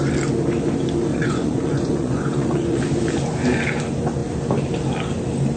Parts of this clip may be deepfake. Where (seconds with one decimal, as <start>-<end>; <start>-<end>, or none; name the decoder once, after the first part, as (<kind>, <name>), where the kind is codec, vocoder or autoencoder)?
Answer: 1.1-2.8 (vocoder, Vocos)